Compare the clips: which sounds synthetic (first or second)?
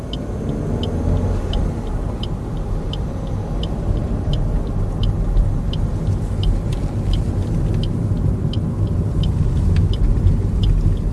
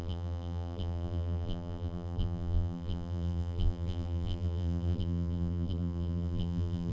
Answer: second